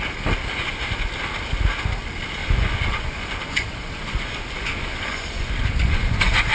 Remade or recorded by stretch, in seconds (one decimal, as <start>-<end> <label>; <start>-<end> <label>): 0.0-0.4 recorded; 0.4-1.1 remade; 1.1-2.4 recorded; 2.4-6.5 remade